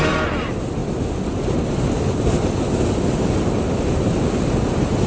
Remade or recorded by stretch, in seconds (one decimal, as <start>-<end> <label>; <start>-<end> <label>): 0.0-5.1 recorded

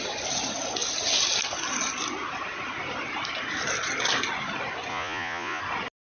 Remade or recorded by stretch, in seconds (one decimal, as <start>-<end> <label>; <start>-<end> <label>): 0.0-4.9 recorded; 4.9-5.6 remade; 5.6-6.2 recorded

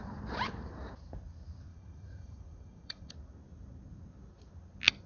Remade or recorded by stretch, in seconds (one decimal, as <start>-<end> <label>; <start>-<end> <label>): 0.0-1.7 recorded; 1.7-3.1 remade; 3.1-5.1 recorded

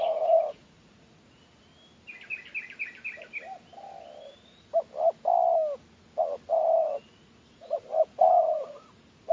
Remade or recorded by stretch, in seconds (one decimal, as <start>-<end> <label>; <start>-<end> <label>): 0.0-1.7 remade; 1.7-4.2 recorded; 4.2-4.7 remade; 4.7-6.8 recorded; 6.8-9.3 remade

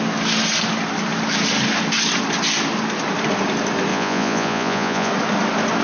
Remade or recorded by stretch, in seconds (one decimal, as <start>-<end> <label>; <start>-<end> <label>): 0.0-3.9 recorded; 3.9-5.1 remade; 5.1-5.8 recorded

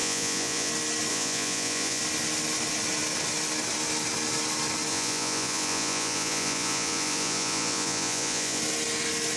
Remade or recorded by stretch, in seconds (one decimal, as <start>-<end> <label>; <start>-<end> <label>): 0.0-0.7 remade; 0.7-1.1 recorded; 1.1-2.0 remade; 2.0-4.9 recorded; 4.9-8.6 remade; 8.6-9.4 recorded